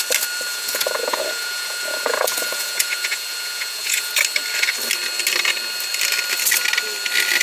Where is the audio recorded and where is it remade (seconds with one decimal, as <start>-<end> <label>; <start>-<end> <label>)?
0.0-0.5 recorded; 0.5-4.1 remade; 4.1-7.4 recorded